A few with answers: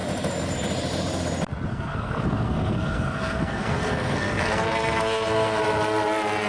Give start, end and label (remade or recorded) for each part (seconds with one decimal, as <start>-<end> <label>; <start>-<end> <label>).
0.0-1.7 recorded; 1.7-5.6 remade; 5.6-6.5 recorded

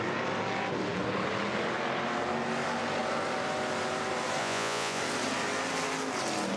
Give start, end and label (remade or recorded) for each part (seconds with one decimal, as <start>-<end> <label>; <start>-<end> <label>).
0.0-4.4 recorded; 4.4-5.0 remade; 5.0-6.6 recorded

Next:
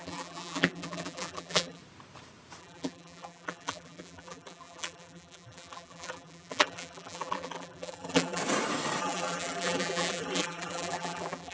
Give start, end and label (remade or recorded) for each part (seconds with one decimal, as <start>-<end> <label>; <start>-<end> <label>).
0.0-1.8 remade; 1.8-2.6 recorded; 2.6-8.4 remade; 8.4-9.0 recorded; 9.0-11.5 remade